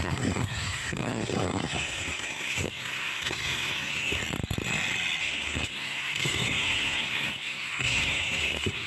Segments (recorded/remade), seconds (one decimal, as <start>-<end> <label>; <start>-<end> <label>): 0.0-4.2 remade; 4.2-5.2 recorded; 5.2-8.9 remade